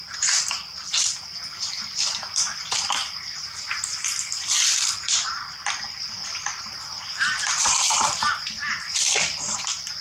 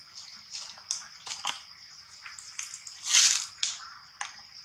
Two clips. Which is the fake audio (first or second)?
first